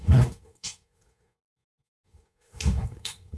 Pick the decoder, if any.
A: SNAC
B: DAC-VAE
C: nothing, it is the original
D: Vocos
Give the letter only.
A